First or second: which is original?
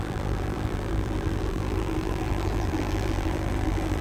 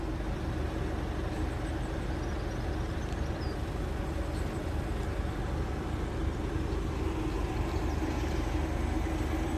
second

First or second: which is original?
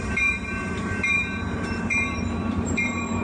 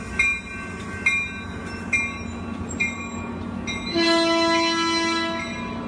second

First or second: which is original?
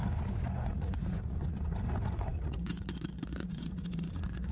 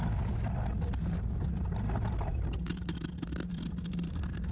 second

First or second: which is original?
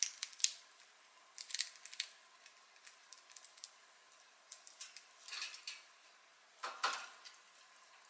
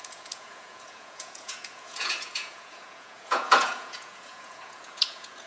first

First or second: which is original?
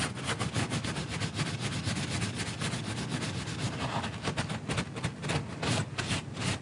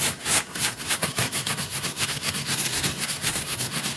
first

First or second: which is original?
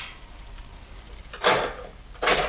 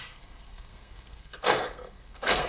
first